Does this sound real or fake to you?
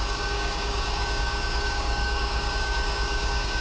fake